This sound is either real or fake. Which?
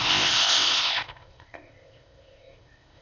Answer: fake